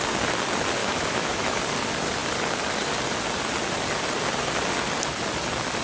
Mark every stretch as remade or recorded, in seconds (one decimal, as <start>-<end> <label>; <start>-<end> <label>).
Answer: 0.0-0.8 recorded; 0.8-1.6 remade; 1.6-5.8 recorded